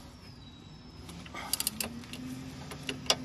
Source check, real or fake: real